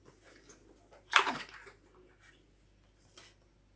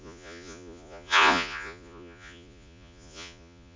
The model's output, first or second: second